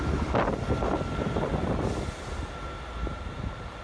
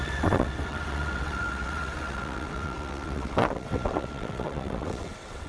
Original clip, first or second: first